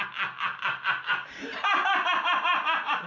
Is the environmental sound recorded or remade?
recorded